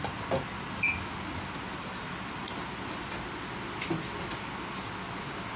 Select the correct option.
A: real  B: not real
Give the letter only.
A